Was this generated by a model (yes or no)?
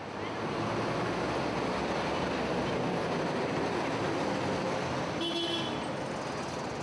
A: no